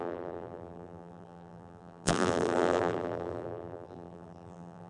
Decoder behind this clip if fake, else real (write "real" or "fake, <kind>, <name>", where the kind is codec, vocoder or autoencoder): fake, vocoder, BigVGAN v2